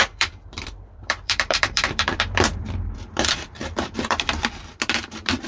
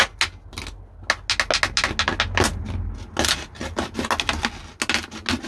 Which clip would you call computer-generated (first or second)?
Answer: first